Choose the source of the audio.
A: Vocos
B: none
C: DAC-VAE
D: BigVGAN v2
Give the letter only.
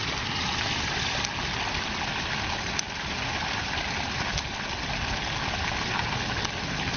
B